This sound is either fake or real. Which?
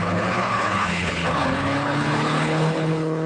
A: fake